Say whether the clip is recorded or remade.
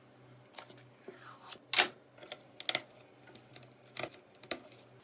recorded